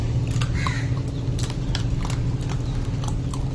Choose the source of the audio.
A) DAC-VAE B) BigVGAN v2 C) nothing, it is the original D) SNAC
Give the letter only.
C